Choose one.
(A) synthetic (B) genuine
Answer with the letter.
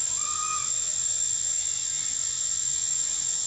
A